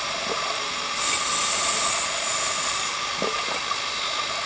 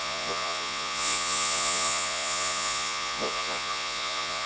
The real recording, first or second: first